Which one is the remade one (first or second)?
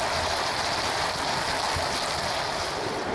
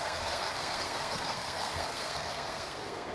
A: second